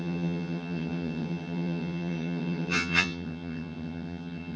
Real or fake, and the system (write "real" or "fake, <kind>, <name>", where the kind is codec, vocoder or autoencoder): fake, vocoder, HiFi-GAN